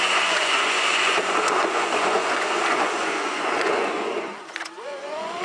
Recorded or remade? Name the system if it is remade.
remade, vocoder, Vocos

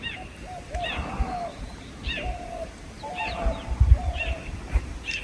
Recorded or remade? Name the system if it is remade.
recorded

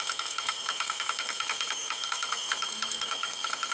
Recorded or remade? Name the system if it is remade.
remade, codec, SNAC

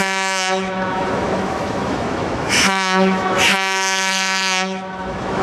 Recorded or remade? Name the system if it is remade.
remade, autoencoder, DAC-VAE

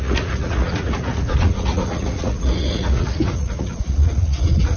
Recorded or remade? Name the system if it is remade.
remade, vocoder, Vocos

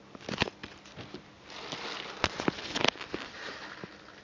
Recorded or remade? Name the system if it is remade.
recorded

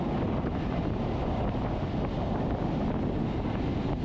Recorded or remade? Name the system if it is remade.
recorded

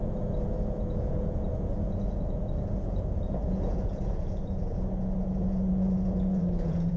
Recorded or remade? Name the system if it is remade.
remade, vocoder, Vocos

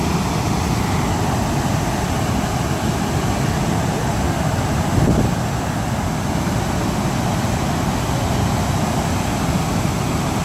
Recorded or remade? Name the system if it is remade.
recorded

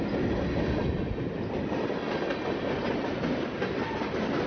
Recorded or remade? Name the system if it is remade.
recorded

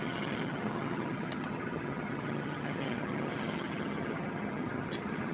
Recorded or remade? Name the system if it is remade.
remade, vocoder, HiFi-GAN